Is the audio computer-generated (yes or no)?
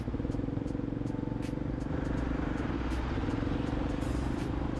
no